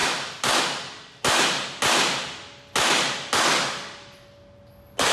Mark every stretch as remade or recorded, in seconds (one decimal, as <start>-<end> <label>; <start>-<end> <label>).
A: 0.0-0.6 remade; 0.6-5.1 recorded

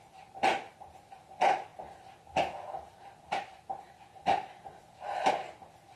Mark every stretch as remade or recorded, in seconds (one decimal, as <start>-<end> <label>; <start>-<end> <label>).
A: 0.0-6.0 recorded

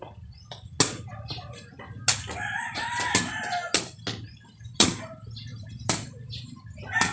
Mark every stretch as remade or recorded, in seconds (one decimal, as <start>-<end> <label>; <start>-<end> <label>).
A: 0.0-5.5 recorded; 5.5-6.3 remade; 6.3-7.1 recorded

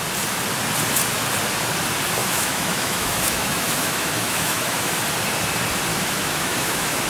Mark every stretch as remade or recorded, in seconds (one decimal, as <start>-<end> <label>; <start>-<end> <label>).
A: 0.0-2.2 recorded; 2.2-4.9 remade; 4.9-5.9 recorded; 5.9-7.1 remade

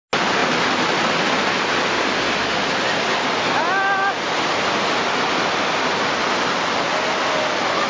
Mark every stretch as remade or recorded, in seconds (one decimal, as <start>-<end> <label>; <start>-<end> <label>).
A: 0.0-7.9 recorded

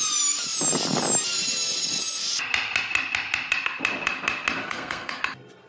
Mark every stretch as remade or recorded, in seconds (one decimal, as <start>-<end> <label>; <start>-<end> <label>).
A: 0.0-4.6 recorded; 4.6-5.2 remade; 5.2-5.7 recorded

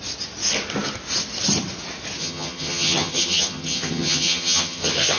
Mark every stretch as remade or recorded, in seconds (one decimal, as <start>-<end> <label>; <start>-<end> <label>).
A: 0.0-2.2 recorded; 2.2-5.2 remade

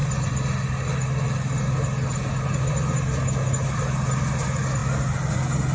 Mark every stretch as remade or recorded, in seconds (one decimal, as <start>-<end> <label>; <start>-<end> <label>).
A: 0.0-5.7 recorded